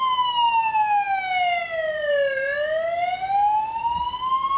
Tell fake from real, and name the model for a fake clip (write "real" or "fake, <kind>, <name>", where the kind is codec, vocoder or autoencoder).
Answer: real